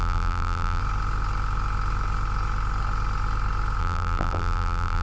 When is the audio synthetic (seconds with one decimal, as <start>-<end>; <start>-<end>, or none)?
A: 0.0-0.8; 3.8-5.0